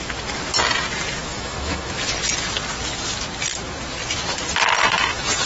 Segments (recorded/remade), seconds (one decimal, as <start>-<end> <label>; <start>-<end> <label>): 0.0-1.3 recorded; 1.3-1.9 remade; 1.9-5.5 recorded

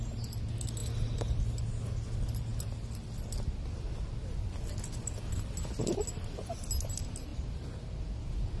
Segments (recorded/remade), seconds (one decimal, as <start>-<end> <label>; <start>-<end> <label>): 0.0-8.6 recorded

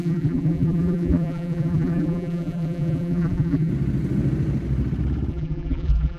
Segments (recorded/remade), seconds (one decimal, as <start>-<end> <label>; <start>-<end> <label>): 0.0-3.7 remade; 3.7-5.3 recorded; 5.3-6.2 remade

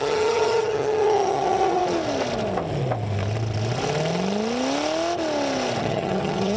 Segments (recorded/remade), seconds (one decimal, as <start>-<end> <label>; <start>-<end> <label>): 0.0-1.8 remade; 1.8-5.8 recorded; 5.8-6.6 remade